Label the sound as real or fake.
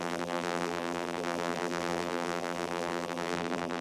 fake